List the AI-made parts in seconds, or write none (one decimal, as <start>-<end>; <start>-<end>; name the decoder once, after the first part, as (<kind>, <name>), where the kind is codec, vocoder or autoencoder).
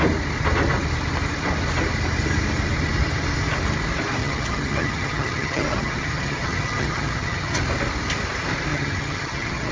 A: 4.2-7.6 (vocoder, HiFi-GAN); 8.7-9.7